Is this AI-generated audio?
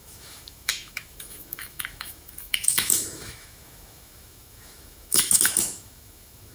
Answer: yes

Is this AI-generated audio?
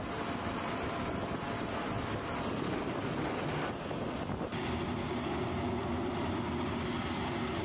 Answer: no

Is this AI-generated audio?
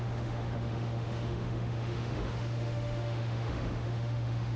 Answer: yes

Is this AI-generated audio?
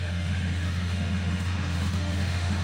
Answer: yes